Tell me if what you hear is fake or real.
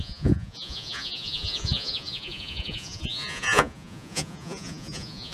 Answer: fake